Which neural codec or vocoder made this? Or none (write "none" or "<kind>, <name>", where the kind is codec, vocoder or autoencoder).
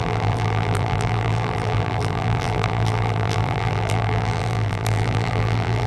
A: vocoder, BigVGAN v2